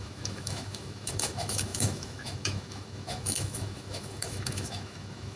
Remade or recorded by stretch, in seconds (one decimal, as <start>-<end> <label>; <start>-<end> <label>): 0.0-5.4 remade